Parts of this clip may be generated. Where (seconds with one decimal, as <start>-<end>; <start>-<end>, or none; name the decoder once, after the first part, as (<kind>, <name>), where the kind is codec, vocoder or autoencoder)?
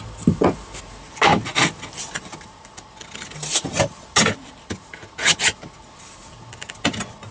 none